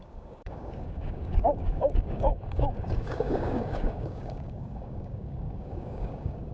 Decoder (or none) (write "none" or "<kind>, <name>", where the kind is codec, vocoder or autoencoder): codec, DAC